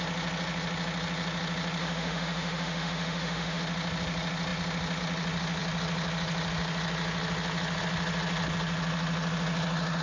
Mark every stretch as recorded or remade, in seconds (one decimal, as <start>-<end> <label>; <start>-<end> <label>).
0.0-1.8 recorded; 1.8-3.6 remade; 3.6-10.0 recorded